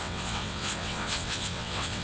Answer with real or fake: fake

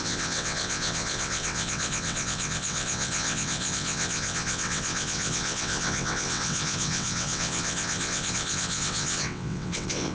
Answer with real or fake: fake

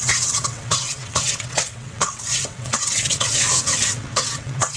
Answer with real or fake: fake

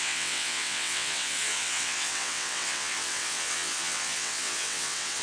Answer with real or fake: fake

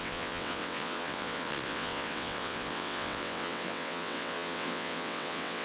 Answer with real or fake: fake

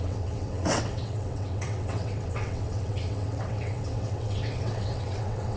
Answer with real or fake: fake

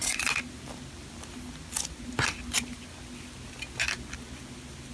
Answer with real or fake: real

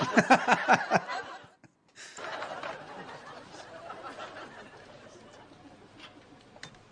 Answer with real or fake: real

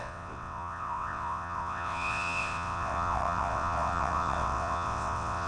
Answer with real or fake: fake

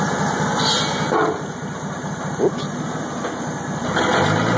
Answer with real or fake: real